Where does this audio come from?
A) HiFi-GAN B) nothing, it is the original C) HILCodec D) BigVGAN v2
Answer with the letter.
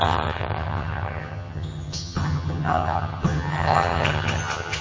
A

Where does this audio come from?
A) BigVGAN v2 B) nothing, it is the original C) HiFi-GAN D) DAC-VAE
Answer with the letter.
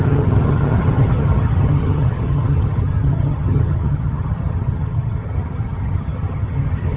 C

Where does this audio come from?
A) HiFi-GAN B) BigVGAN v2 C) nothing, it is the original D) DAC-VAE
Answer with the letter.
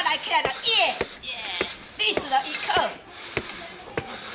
C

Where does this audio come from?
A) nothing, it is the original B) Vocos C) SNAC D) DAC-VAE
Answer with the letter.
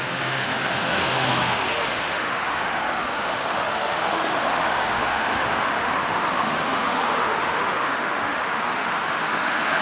D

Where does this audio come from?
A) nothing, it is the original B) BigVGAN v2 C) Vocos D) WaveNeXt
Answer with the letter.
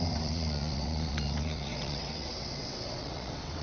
D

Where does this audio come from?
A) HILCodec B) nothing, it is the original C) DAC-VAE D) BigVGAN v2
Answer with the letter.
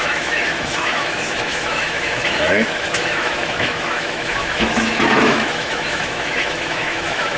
C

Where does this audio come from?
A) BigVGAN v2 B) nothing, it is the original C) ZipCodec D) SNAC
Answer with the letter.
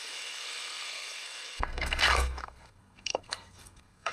D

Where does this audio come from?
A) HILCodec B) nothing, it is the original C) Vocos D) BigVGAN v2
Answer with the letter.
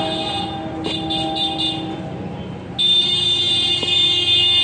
B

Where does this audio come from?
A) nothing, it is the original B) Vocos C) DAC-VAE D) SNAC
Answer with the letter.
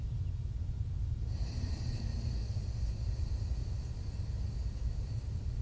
A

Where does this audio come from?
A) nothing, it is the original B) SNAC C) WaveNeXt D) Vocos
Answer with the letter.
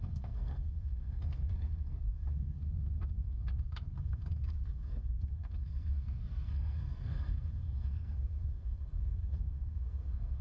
B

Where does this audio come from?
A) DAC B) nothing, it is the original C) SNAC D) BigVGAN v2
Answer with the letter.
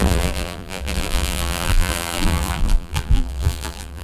D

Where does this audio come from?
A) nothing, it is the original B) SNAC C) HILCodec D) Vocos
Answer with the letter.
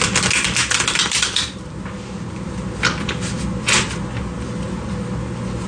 A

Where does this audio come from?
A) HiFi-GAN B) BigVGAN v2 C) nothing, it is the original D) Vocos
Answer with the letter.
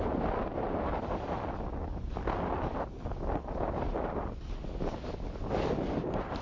C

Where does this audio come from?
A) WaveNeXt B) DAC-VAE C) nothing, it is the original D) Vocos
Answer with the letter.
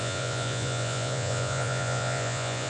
D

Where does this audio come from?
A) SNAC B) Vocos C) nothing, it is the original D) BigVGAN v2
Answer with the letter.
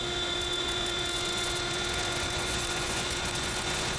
B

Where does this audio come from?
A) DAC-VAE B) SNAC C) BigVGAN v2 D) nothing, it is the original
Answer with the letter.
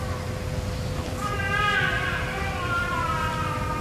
C